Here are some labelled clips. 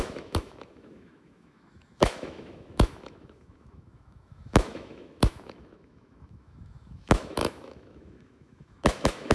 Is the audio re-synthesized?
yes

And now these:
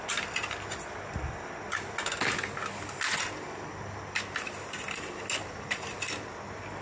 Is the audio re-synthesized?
no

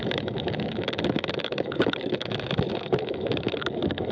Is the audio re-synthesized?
yes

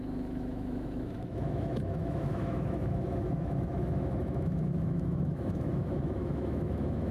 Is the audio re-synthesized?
yes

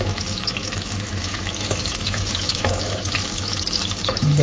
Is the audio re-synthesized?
yes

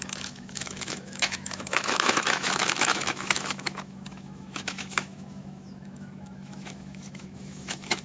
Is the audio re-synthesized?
yes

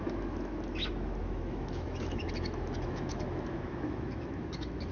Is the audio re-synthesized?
yes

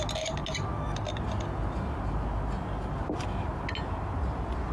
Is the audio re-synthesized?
no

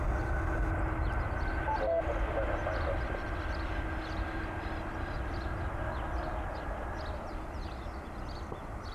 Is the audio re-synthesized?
no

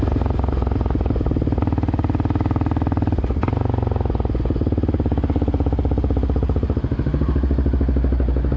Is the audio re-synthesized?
no